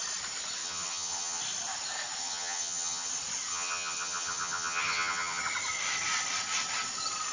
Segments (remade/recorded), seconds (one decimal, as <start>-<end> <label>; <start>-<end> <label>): 0.0-0.6 recorded; 0.6-1.4 remade; 1.4-2.2 recorded; 2.2-3.1 remade; 3.1-3.5 recorded; 3.5-5.4 remade; 5.4-7.3 recorded